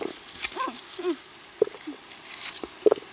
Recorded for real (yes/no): yes